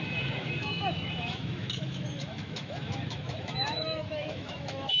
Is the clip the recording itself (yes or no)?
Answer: no